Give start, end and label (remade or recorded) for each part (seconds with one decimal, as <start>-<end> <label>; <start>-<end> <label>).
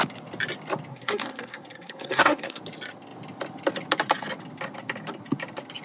0.0-0.9 recorded; 0.9-2.6 remade; 2.6-5.8 recorded